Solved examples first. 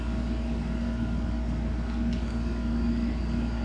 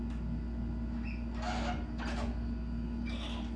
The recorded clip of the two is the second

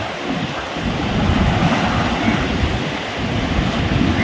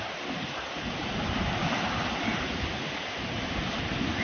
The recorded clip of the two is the first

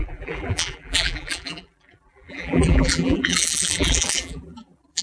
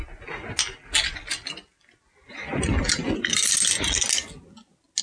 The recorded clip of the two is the second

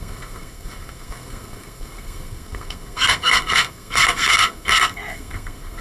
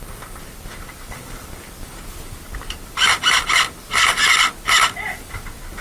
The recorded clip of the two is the second